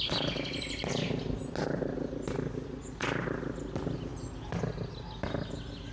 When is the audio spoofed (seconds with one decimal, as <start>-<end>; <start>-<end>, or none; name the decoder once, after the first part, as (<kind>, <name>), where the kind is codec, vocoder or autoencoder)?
none